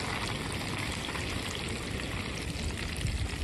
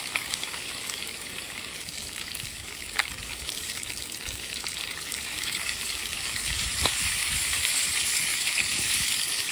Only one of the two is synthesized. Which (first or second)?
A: second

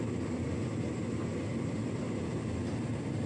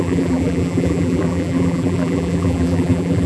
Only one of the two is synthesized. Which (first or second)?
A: second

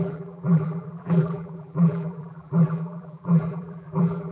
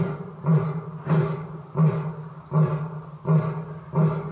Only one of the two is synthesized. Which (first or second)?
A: first